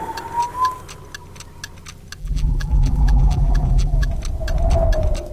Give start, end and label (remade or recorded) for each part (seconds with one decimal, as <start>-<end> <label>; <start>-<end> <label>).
0.0-2.2 recorded; 2.2-4.1 remade; 4.1-5.3 recorded